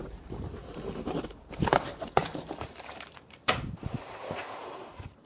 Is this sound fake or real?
fake